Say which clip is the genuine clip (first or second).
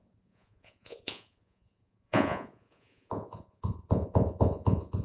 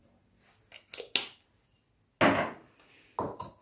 second